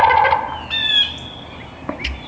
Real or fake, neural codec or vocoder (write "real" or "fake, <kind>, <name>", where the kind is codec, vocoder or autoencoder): real